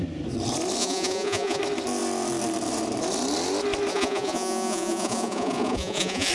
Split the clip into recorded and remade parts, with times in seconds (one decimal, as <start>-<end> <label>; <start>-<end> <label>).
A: 0.0-0.8 recorded; 0.8-1.6 remade; 1.6-3.9 recorded; 3.9-6.3 remade

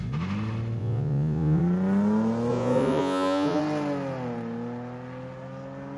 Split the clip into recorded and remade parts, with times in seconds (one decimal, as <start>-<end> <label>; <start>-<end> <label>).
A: 0.0-0.8 recorded; 0.8-1.6 remade; 1.6-2.5 recorded; 2.5-3.6 remade; 3.6-6.0 recorded